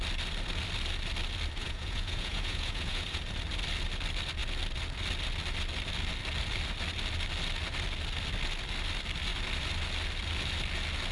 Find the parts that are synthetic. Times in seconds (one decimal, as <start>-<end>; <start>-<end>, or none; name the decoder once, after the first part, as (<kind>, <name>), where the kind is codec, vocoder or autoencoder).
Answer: 1.6-3.2 (vocoder, Vocos)